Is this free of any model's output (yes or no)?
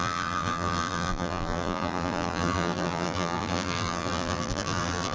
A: no